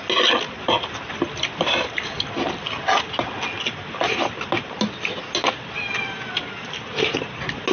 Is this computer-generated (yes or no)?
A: no